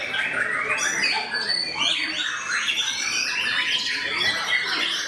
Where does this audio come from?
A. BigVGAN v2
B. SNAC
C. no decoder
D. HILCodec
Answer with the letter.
C